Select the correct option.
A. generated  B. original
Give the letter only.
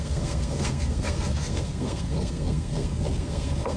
A